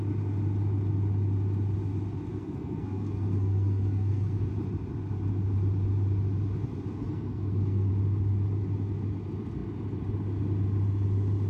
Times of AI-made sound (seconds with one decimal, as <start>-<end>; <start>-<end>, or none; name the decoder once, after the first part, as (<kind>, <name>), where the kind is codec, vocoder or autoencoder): 2.3-4.5 (codec, SNAC); 7.0-7.9